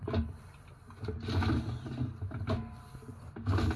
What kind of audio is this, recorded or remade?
recorded